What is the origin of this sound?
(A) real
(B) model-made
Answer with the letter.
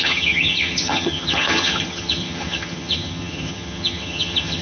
B